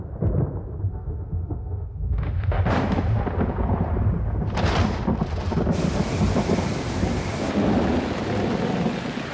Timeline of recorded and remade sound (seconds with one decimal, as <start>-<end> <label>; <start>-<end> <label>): 0.0-0.9 recorded; 0.9-2.6 remade; 2.6-9.3 recorded